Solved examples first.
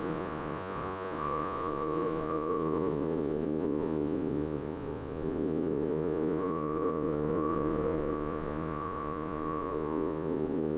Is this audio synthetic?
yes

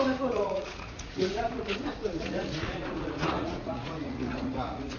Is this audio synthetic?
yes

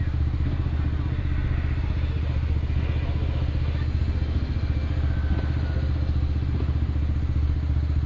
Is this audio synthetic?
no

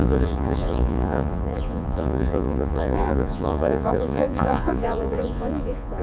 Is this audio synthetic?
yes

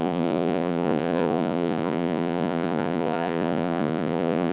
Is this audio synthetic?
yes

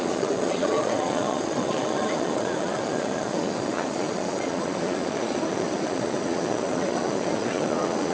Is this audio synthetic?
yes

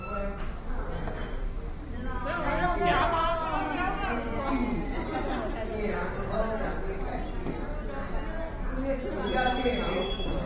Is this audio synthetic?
no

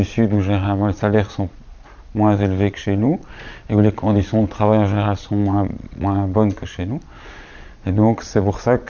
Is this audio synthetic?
yes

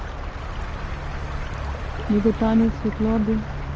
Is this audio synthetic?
no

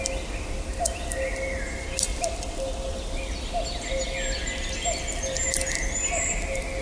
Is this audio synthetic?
no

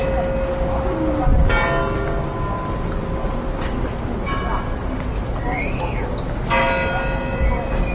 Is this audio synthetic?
no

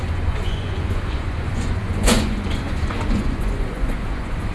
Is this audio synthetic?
yes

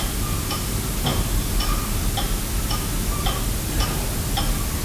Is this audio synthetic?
no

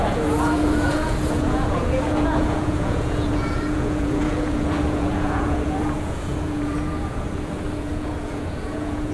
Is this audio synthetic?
yes